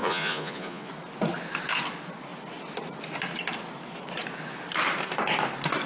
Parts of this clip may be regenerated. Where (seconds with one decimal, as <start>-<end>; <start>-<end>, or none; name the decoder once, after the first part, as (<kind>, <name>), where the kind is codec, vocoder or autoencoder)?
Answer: 0.0-0.9 (vocoder, Vocos)